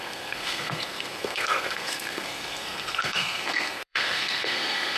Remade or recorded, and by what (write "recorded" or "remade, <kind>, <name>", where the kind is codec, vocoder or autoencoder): remade, codec, SNAC